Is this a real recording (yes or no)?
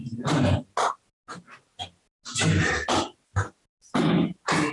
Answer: yes